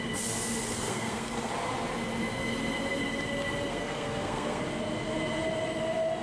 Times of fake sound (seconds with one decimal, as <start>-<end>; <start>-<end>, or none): 0.6-1.5; 3.7-4.6